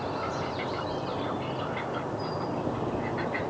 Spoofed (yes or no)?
no